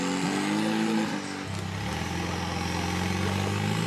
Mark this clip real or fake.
real